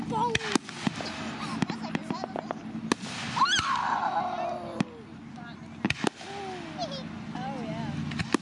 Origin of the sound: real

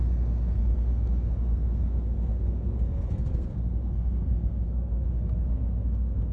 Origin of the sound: fake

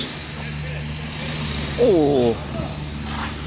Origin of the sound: real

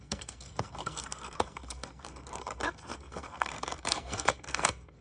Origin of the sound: fake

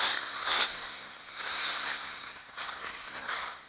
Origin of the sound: fake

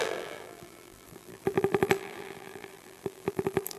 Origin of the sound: fake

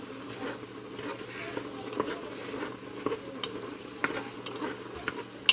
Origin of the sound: real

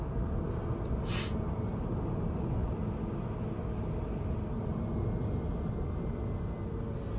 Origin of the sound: real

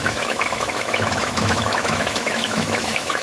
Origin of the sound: fake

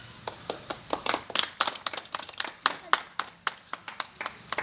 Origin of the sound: real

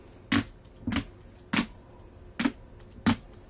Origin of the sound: real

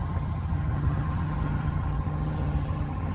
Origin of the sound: fake